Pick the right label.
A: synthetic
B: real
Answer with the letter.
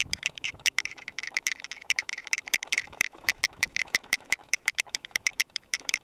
A